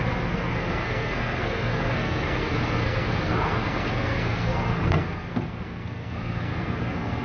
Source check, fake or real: fake